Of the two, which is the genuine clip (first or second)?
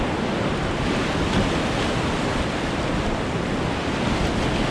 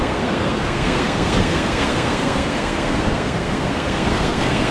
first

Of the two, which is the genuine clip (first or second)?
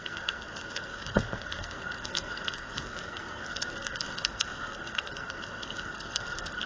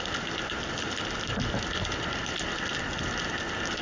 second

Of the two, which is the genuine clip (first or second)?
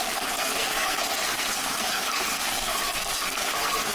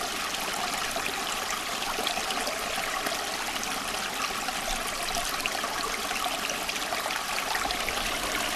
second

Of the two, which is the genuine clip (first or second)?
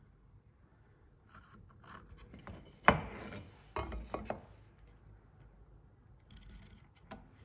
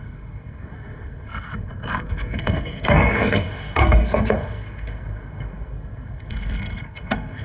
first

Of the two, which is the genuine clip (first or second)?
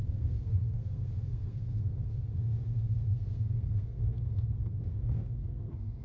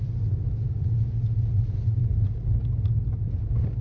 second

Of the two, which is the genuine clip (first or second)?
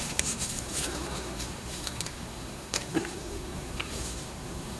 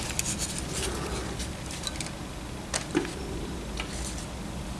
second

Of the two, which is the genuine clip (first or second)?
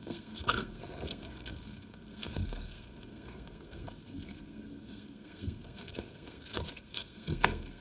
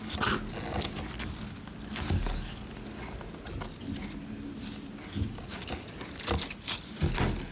second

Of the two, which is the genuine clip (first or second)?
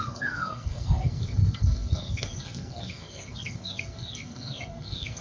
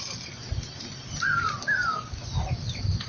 second